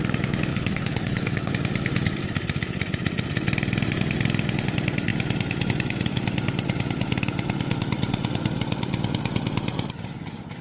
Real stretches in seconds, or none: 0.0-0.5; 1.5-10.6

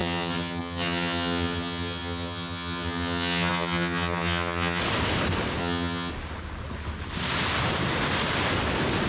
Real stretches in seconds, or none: 4.8-5.6; 6.1-9.1

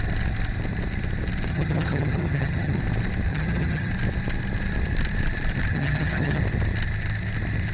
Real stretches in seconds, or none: 0.0-1.5; 2.8-3.3; 3.9-5.7; 6.4-7.7